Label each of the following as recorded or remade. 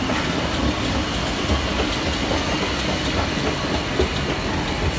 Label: recorded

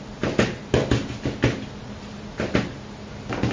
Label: recorded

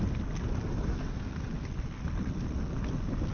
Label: recorded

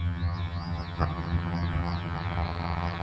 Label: remade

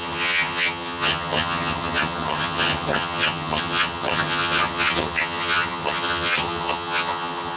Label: remade